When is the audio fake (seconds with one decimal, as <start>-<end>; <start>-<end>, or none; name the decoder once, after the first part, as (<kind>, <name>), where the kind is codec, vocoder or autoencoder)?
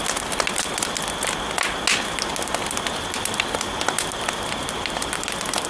none